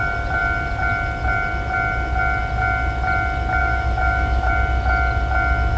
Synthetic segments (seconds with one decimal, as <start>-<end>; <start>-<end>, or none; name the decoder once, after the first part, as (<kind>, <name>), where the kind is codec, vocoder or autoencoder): 3.6-4.5 (autoencoder, DAC-VAE)